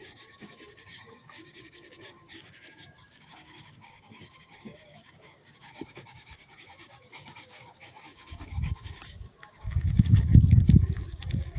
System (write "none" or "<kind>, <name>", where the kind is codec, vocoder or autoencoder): codec, DAC